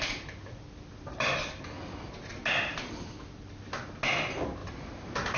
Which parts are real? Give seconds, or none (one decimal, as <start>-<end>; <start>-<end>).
0.0-5.4